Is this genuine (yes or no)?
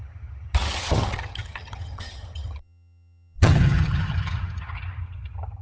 no